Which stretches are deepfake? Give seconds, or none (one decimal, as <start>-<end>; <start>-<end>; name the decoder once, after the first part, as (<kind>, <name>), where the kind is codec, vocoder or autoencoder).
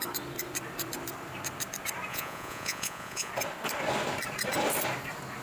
2.1-3.3 (vocoder, Vocos)